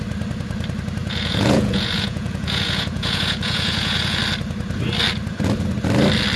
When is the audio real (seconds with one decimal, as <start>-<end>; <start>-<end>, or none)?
0.0-1.0; 4.2-6.4